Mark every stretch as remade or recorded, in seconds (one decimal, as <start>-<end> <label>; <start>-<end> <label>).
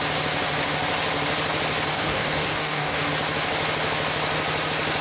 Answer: 0.0-1.9 recorded; 1.9-3.1 remade; 3.1-5.0 recorded